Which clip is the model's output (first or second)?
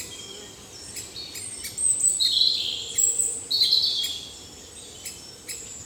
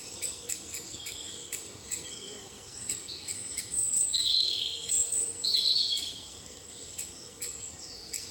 second